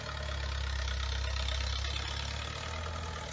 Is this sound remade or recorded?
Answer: recorded